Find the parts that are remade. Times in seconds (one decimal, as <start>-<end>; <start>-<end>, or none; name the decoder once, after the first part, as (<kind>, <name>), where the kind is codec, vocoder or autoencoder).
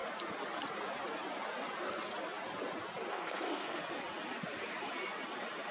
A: 3.1-3.8 (codec, SNAC)